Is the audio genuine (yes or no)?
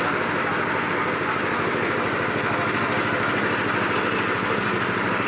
yes